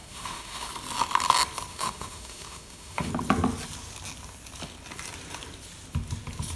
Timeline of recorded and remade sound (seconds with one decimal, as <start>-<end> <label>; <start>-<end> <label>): 0.0-0.7 remade; 0.7-1.7 recorded; 1.7-3.1 remade; 3.1-6.6 recorded